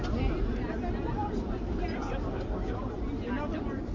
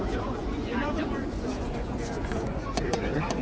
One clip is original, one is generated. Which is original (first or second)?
first